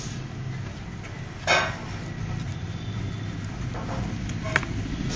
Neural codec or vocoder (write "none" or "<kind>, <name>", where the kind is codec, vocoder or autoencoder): none